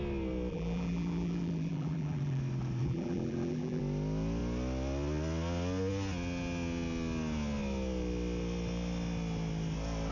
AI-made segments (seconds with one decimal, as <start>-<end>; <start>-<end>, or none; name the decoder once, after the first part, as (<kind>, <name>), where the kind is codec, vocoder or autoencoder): 0.5-2.4 (vocoder, BigVGAN v2); 2.8-3.8